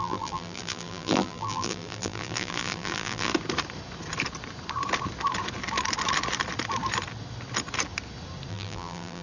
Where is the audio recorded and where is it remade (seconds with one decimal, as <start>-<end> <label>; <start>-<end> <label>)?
0.0-3.3 remade; 3.3-8.5 recorded; 8.5-9.2 remade